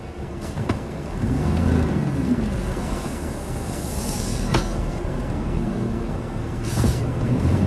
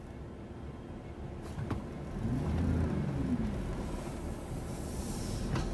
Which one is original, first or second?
second